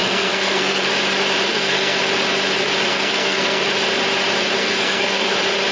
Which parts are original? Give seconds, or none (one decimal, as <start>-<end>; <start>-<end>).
0.9-1.5; 2.0-2.9; 3.6-4.6; 5.3-5.7